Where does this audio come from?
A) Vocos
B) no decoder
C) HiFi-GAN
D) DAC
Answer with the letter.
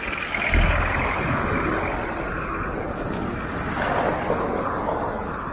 B